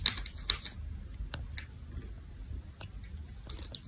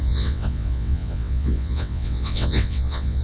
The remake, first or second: second